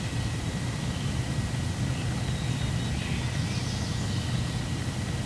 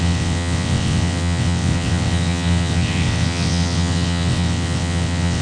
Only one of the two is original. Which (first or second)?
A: first